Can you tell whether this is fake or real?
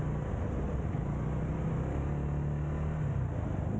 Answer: real